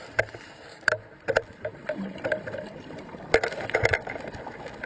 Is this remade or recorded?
remade